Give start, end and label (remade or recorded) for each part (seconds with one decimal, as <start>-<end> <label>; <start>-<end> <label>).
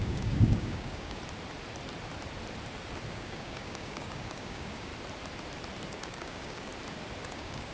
0.0-1.2 remade; 1.2-3.1 recorded; 3.1-4.9 remade; 4.9-5.9 recorded; 5.9-6.7 remade; 6.7-7.3 recorded; 7.3-7.7 remade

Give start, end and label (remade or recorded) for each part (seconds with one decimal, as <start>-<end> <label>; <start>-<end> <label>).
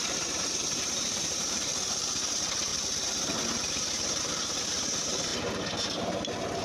0.0-1.7 remade; 1.7-2.3 recorded; 2.3-2.7 remade; 2.7-3.8 recorded; 3.8-5.3 remade; 5.3-6.6 recorded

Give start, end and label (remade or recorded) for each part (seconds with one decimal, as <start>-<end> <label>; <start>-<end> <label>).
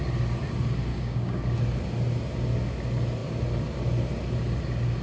0.0-0.9 recorded; 0.9-1.4 remade; 1.4-5.0 recorded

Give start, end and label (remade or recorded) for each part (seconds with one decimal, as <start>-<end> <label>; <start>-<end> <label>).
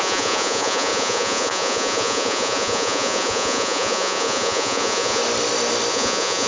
0.0-5.2 remade; 5.2-5.9 recorded; 5.9-6.5 remade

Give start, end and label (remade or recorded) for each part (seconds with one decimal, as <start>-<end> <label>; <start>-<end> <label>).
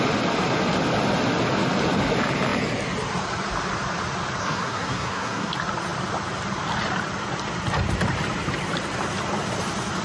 0.0-4.4 recorded; 4.4-5.5 remade; 5.5-10.0 recorded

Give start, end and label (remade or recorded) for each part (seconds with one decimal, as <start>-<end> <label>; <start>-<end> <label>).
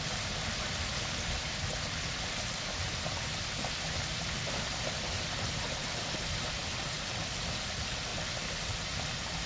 0.0-9.5 recorded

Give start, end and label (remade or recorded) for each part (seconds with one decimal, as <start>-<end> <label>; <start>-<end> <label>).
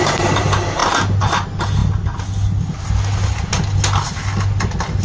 0.0-5.0 recorded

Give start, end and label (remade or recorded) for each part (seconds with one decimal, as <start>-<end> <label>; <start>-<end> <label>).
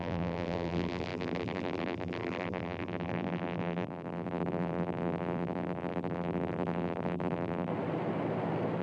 0.0-7.7 remade; 7.7-8.8 recorded